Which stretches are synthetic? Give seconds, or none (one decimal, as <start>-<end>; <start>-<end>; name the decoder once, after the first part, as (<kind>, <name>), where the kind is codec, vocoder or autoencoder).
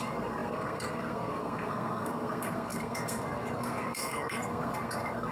0.0-5.3 (codec, SNAC)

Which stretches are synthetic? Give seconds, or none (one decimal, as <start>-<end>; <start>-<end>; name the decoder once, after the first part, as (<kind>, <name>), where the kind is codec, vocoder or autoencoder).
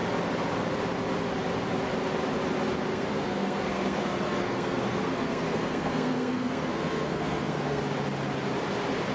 2.9-7.8 (codec, SNAC)